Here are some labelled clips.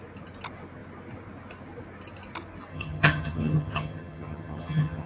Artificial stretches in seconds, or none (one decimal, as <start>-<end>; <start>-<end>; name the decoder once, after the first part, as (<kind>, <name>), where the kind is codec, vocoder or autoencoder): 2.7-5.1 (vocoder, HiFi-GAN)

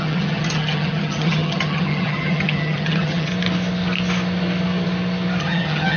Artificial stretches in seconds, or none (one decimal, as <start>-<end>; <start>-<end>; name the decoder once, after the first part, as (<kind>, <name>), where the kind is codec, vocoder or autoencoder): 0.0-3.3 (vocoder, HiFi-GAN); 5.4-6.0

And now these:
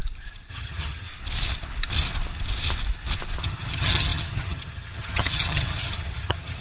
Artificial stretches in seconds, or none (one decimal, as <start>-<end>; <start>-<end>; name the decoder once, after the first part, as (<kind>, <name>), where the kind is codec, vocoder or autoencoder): 0.5-1.1 (vocoder, HiFi-GAN); 3.4-6.6